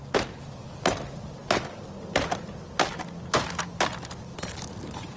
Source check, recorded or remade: recorded